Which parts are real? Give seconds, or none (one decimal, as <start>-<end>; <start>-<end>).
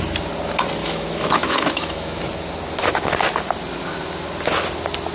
0.0-0.8; 2.2-5.1